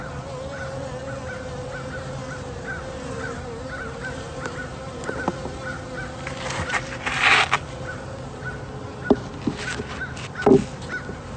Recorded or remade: recorded